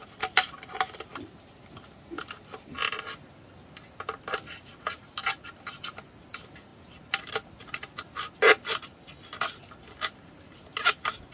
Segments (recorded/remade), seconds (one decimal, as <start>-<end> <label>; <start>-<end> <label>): 0.0-11.3 recorded